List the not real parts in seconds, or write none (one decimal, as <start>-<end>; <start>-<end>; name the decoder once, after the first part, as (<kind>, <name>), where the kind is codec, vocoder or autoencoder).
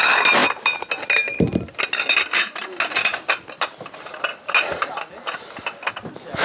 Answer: none